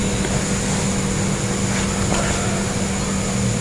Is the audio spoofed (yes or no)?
no